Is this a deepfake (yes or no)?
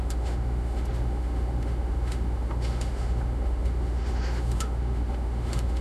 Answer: yes